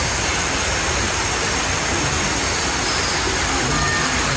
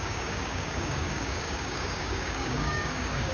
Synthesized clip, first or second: second